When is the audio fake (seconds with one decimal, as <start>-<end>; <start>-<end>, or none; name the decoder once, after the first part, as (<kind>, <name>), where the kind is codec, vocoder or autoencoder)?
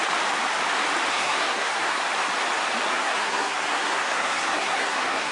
1.1-2.0 (codec, SNAC); 2.9-5.3